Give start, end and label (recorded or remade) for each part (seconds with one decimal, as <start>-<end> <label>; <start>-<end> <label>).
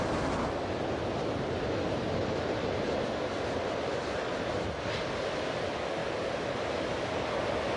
0.0-7.8 recorded